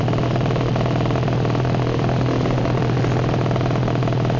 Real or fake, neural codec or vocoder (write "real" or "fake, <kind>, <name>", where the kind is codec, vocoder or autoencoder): real